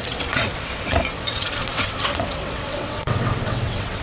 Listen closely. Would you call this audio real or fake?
fake